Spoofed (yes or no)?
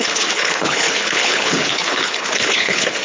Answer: yes